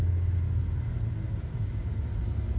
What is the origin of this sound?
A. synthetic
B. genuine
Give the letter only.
B